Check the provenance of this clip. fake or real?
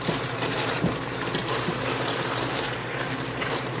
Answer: fake